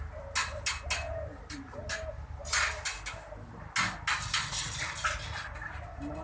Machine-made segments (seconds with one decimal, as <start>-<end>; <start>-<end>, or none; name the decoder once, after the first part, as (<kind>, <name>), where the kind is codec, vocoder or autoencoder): none